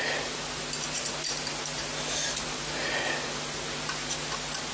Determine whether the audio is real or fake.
real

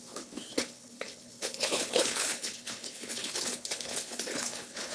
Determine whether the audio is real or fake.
fake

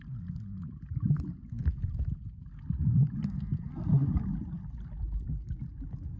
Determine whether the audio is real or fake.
real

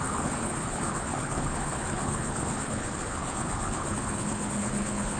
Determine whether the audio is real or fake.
fake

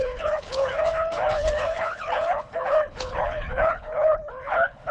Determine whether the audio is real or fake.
fake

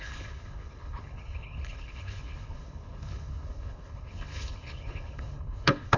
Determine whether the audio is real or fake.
fake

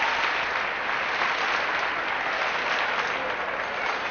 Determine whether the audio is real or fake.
real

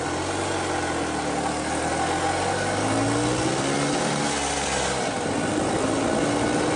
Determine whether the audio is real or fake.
real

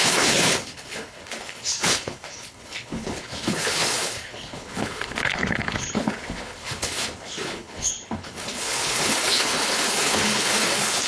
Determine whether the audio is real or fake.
fake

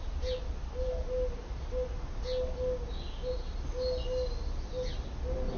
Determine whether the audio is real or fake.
real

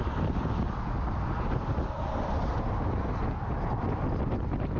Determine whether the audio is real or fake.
real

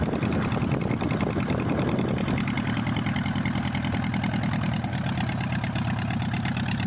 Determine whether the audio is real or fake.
real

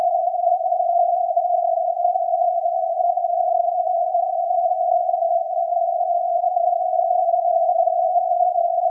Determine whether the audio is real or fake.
real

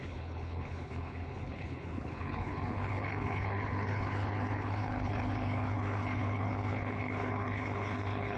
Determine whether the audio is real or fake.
fake